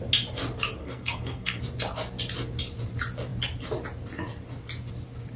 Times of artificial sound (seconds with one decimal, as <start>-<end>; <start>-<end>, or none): 0.8-1.6